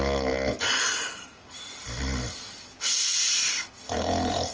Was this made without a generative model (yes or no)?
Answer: yes